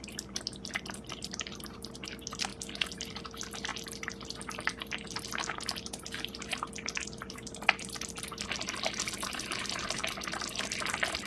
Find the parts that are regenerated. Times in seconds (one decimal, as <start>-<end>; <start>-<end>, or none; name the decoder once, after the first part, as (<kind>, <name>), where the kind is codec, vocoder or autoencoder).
2.5-3.2 (vocoder, BigVGAN v2); 10.0-11.3